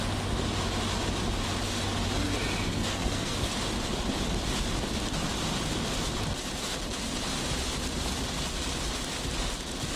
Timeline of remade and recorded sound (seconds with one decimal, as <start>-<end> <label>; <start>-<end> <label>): 0.0-2.7 recorded; 2.7-3.5 remade; 3.5-10.0 recorded